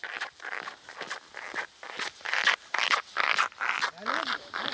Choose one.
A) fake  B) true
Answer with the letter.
B